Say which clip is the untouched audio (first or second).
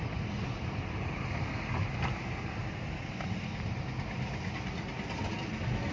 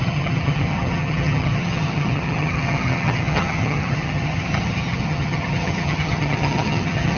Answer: first